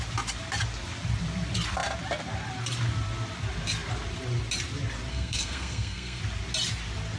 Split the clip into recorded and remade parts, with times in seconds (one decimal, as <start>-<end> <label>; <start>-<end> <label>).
0.0-5.1 recorded; 5.1-6.2 remade; 6.2-7.2 recorded